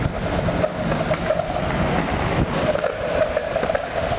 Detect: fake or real real